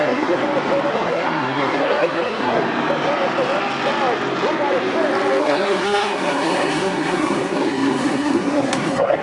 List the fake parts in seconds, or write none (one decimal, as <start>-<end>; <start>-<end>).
0.0-0.4; 0.9-2.6; 5.4-9.2

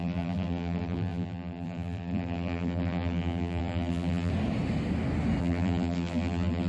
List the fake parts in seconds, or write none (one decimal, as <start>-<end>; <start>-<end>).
0.0-4.3; 5.4-6.7

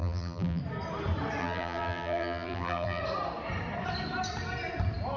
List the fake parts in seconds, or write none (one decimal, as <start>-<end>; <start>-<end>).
0.0-0.6; 1.4-3.0

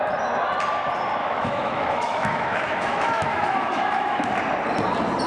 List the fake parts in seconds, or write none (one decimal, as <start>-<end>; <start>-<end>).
1.2-4.3